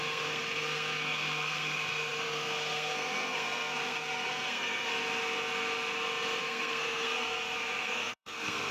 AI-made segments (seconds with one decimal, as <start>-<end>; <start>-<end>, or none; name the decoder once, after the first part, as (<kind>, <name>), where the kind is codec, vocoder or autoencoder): 0.0-4.9 (codec, SNAC); 6.4-8.7